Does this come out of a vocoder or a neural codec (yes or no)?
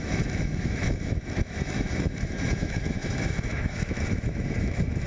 yes